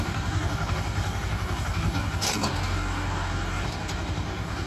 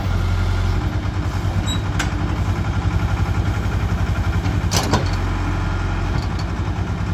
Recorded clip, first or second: second